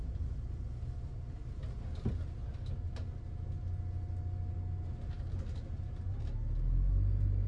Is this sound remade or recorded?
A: recorded